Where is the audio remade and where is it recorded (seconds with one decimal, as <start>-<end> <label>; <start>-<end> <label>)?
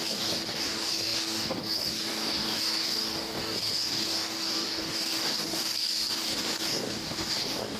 0.0-7.8 remade